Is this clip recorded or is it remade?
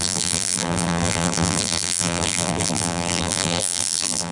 remade